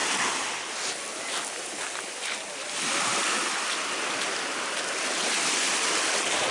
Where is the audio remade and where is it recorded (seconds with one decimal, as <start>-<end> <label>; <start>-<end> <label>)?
0.0-6.5 recorded